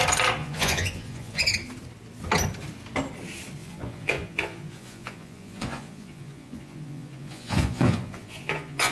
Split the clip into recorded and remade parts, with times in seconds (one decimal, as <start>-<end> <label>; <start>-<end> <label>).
0.0-0.4 recorded; 0.4-1.4 remade; 1.4-3.6 recorded; 3.6-8.9 remade